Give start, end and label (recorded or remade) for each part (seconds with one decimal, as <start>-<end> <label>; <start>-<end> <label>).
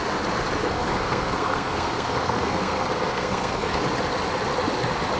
0.0-0.7 recorded; 0.7-3.8 remade; 3.8-5.2 recorded